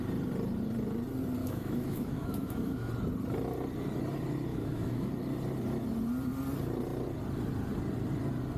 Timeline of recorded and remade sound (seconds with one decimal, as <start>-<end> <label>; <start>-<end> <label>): 0.0-1.4 recorded; 1.4-2.9 remade; 2.9-4.5 recorded; 4.5-5.1 remade; 5.1-8.6 recorded